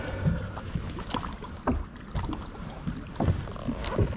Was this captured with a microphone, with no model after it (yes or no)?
yes